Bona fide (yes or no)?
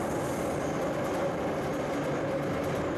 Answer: yes